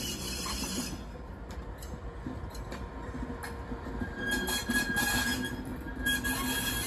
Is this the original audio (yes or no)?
yes